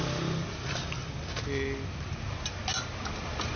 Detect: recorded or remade recorded